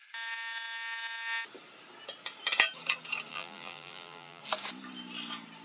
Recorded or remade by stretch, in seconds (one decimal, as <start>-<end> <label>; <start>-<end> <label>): 0.0-3.3 recorded; 3.3-4.4 remade; 4.4-5.6 recorded